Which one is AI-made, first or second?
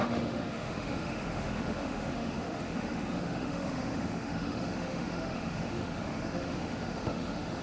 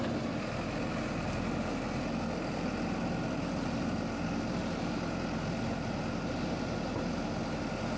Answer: first